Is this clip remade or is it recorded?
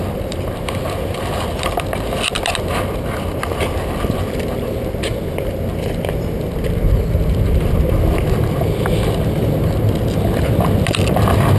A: recorded